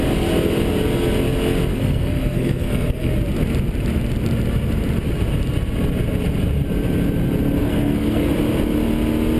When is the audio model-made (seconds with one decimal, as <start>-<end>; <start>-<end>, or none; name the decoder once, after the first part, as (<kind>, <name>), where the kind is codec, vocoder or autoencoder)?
1.7-3.1 (codec, SNAC); 7.6-8.3